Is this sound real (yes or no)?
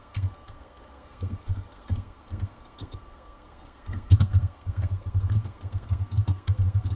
no